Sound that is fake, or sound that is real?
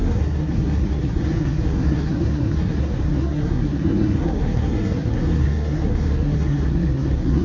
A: fake